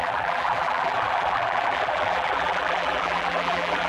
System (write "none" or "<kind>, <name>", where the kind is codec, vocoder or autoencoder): vocoder, BigVGAN v2